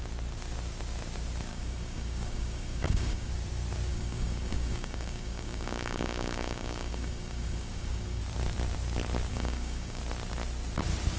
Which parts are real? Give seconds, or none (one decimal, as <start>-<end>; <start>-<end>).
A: 0.0-1.5; 3.3-3.9; 8.2-9.3; 10.0-11.2